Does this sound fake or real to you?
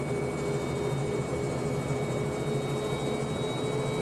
real